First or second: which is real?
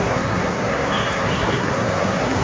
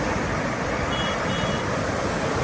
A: second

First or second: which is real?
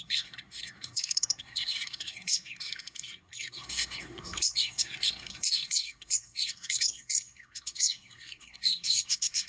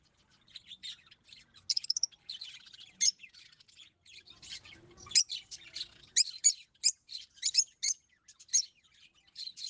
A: second